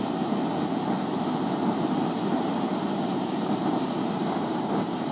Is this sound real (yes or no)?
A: no